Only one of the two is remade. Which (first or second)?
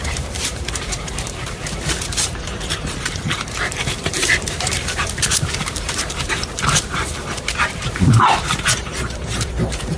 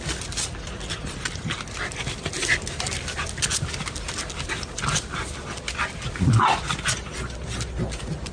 first